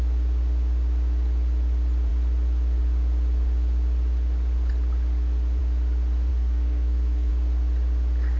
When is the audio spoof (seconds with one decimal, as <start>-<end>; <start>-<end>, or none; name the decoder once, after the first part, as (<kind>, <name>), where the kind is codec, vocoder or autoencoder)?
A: 6.3-7.3 (codec, SNAC)